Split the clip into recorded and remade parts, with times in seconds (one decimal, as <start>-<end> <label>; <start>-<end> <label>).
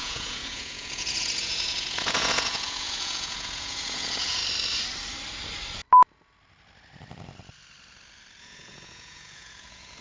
0.0-4.4 remade; 4.4-8.4 recorded; 8.4-10.0 remade